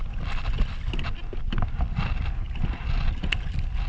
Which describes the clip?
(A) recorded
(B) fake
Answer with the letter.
A